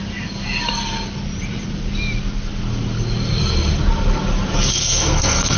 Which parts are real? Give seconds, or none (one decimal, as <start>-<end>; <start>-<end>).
0.0-4.7